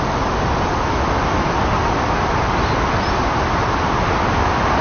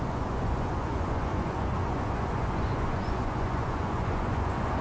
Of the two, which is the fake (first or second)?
second